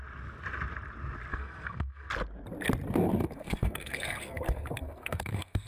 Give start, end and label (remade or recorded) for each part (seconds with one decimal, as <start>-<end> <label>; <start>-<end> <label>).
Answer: 0.0-1.3 recorded; 1.3-2.1 remade; 2.1-3.2 recorded; 3.2-5.7 remade